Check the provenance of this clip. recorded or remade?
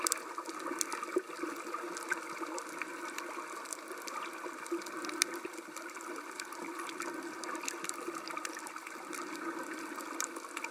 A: recorded